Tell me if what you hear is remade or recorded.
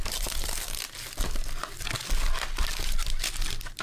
recorded